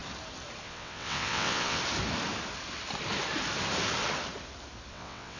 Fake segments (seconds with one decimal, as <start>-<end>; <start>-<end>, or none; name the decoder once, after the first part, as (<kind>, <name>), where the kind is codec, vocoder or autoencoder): 0.6-1.8 (vocoder, WaveNeXt); 4.9-5.4